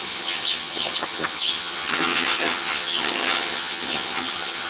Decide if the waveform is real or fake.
fake